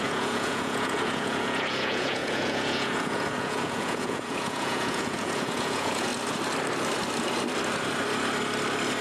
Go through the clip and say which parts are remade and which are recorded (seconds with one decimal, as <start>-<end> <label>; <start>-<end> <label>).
0.0-6.1 remade; 6.1-9.0 recorded